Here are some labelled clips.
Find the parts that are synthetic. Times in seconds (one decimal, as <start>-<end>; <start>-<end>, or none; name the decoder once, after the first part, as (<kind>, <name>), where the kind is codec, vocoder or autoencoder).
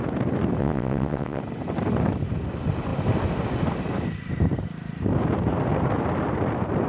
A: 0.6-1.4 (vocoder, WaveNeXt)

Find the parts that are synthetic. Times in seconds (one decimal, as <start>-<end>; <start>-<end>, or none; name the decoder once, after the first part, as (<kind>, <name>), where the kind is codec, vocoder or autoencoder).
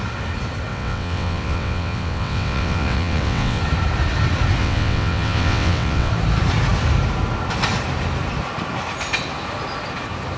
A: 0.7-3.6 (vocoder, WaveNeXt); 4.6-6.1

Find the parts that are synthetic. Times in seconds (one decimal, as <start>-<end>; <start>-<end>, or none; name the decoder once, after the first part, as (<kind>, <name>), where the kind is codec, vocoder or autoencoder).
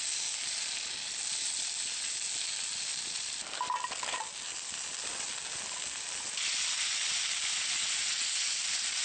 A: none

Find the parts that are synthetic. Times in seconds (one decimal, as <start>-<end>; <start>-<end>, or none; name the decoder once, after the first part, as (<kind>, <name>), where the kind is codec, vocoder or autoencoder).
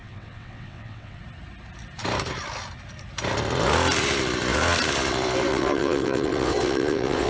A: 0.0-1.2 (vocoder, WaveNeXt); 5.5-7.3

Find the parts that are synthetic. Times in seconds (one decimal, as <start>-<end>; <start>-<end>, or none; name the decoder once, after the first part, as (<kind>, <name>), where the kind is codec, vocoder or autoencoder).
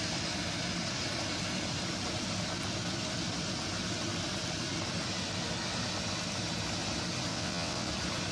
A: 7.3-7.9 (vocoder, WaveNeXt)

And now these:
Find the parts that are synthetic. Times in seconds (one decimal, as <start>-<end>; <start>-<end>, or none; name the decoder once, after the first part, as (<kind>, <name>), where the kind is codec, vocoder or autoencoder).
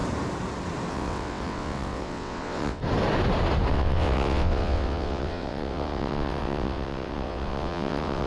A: 0.9-2.8 (vocoder, WaveNeXt); 3.7-8.3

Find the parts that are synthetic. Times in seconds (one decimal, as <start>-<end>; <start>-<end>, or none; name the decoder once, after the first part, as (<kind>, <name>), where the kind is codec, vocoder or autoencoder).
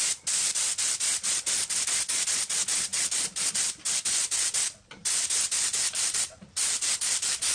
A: none